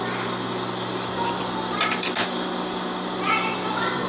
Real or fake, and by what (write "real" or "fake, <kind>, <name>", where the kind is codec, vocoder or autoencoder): real